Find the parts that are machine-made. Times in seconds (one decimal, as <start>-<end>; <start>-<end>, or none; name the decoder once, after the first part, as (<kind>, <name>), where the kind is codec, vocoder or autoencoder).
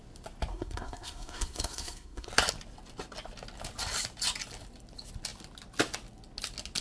0.5-2.3 (codec, SNAC)